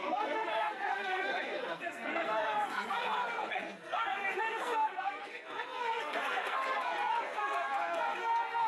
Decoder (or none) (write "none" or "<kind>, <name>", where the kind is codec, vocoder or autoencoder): codec, SNAC